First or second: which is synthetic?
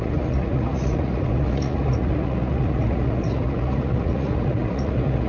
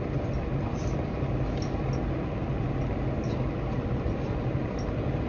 first